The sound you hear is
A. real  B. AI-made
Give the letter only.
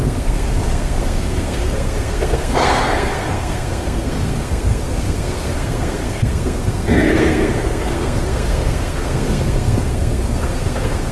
B